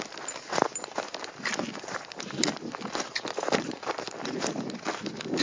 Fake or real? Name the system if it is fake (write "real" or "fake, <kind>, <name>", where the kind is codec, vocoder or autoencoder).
real